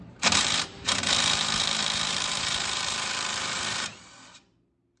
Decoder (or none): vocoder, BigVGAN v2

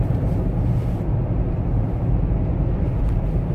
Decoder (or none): none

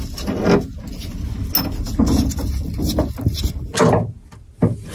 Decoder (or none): none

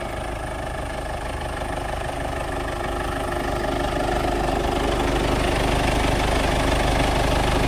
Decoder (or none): none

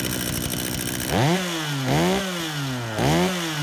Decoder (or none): none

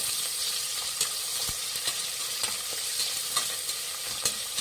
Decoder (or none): vocoder, BigVGAN v2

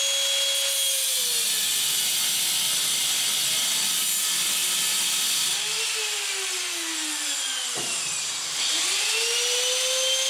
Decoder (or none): none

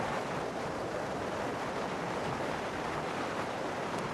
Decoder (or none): vocoder, BigVGAN v2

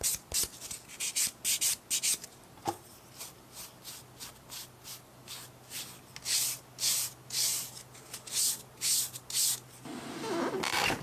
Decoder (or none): none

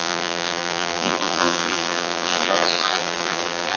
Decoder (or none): vocoder, BigVGAN v2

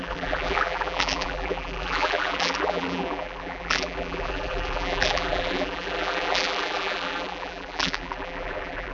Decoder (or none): vocoder, BigVGAN v2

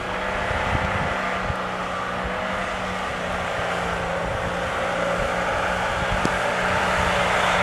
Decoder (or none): none